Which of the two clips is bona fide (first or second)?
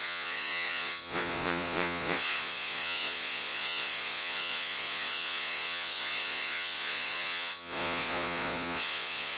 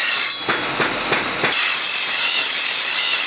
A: second